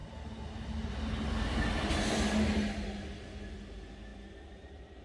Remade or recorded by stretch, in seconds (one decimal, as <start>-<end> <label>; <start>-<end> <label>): 0.0-5.0 recorded